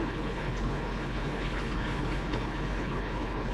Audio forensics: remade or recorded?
remade